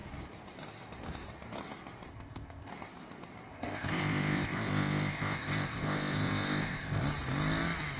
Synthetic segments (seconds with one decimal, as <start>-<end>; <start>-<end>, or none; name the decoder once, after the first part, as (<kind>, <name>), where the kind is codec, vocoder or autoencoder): 2.1-2.7 (codec, ZipCodec); 3.5-7.0